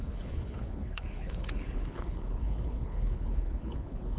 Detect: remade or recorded remade